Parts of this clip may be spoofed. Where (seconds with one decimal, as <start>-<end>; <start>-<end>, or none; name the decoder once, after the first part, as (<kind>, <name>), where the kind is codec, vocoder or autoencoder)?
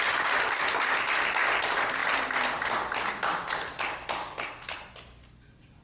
none